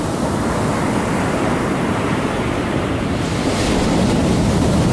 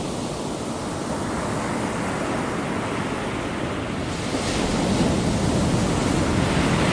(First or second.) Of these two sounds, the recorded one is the second